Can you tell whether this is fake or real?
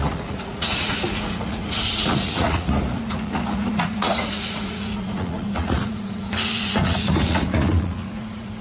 fake